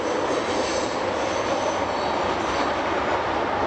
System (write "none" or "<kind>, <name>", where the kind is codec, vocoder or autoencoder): none